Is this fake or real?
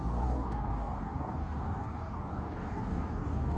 fake